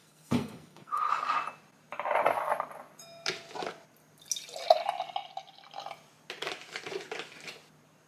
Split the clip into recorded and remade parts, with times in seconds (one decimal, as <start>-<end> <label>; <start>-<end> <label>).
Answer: 0.0-1.1 remade; 1.1-8.1 recorded